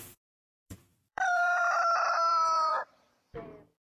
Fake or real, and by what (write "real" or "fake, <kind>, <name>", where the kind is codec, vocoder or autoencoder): fake, vocoder, BigVGAN v2